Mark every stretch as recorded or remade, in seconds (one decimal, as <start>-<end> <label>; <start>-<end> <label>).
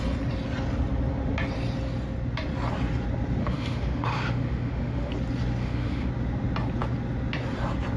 0.0-3.4 recorded; 3.4-5.1 remade; 5.1-5.6 recorded; 5.6-6.1 remade; 6.1-8.0 recorded